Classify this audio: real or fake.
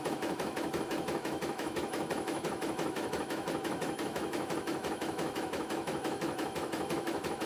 fake